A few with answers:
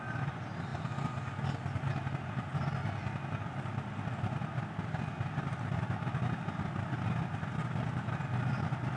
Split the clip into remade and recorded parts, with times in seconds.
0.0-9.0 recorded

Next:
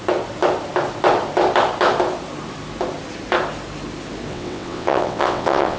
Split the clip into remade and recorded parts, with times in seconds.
0.0-4.3 recorded; 4.3-5.8 remade

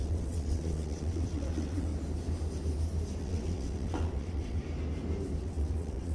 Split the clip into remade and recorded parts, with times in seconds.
0.0-1.9 remade; 1.9-3.2 recorded; 3.2-4.6 remade; 4.6-5.4 recorded; 5.4-6.1 remade

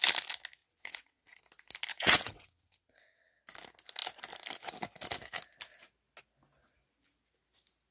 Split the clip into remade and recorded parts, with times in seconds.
0.0-0.6 recorded; 0.6-1.4 remade; 1.4-1.9 recorded; 1.9-3.4 remade; 3.4-7.9 recorded

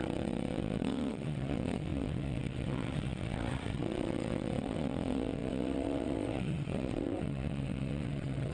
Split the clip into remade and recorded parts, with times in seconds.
0.0-8.5 remade

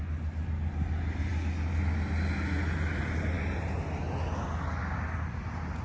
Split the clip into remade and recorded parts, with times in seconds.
0.0-5.8 recorded